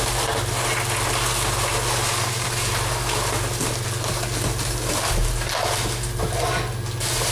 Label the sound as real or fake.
real